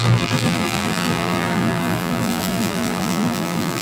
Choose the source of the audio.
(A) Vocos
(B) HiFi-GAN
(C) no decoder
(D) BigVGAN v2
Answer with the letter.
D